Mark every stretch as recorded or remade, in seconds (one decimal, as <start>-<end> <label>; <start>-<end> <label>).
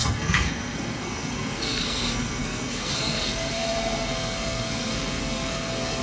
0.0-6.0 remade